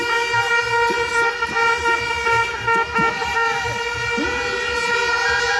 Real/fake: real